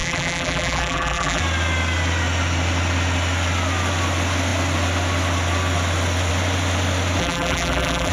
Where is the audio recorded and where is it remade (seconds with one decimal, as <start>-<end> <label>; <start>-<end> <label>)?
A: 0.0-1.4 remade; 1.4-7.2 recorded; 7.2-8.1 remade